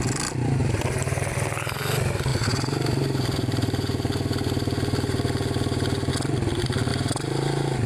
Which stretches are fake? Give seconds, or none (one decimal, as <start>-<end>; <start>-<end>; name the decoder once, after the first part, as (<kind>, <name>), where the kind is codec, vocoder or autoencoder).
0.6-1.2 (vocoder, BigVGAN v2); 2.3-6.1; 6.9-7.9